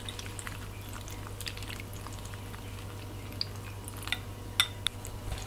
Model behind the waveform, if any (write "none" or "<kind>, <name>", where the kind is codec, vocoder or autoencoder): none